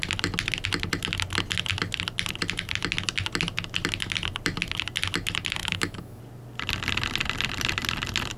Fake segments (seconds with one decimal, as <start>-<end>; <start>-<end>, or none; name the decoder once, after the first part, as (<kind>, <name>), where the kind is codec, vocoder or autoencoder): 5.6-6.2 (autoencoder, DAC-VAE)